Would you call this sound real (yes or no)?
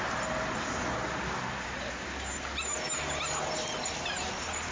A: yes